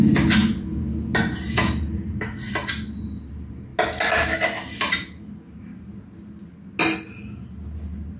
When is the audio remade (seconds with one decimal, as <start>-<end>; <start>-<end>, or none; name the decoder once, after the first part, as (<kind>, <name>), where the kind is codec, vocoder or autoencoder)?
none